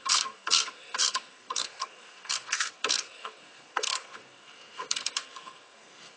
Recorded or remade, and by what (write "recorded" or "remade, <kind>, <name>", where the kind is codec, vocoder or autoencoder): remade, codec, SNAC